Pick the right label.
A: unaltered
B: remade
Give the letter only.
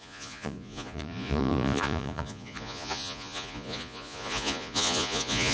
B